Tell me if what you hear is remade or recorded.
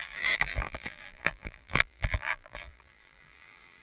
remade